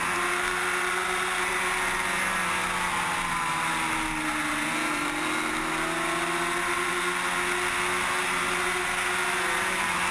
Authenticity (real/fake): real